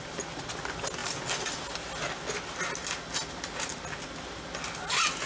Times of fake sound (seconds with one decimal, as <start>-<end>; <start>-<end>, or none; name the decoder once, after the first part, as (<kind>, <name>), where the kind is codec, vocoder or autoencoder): none